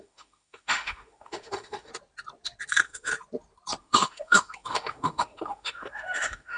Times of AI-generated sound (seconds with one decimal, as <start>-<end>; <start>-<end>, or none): 0.0-1.9; 2.7-3.1; 3.8-6.6